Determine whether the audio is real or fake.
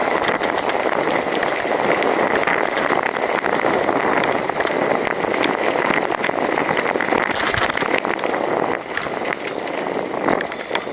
real